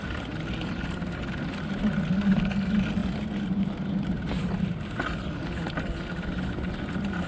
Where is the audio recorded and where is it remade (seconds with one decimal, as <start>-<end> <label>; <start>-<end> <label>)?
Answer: 0.0-3.0 recorded; 3.0-4.3 remade; 4.3-7.3 recorded